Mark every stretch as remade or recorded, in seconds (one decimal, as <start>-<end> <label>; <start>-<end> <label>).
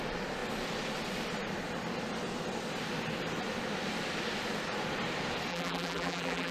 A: 0.0-5.5 recorded; 5.5-6.5 remade